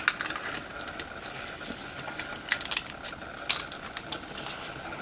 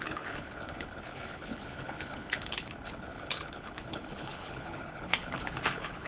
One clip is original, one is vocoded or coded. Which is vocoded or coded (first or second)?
second